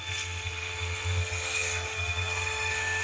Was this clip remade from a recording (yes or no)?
yes